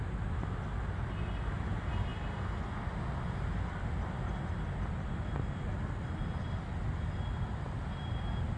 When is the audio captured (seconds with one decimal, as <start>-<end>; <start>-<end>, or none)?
0.0-8.6